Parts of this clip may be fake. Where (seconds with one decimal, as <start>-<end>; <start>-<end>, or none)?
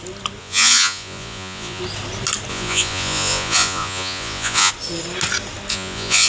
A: 0.4-1.8; 2.5-4.7; 5.7-6.3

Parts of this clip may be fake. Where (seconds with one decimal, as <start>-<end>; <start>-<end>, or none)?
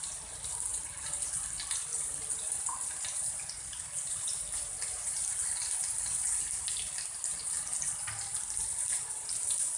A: none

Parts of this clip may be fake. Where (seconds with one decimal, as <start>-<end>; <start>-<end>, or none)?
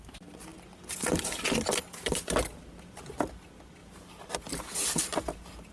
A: 3.8-5.0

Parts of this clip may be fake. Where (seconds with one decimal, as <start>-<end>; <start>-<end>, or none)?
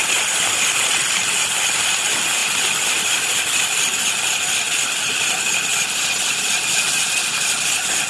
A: none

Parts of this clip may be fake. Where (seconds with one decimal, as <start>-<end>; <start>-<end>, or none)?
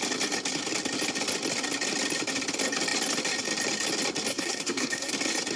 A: 4.3-5.1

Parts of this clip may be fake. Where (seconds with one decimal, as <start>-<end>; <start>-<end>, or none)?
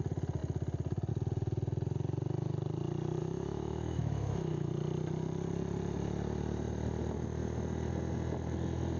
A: 3.2-4.7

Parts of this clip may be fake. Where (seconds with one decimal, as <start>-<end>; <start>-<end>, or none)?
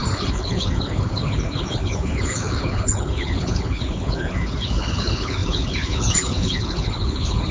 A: 0.0-7.5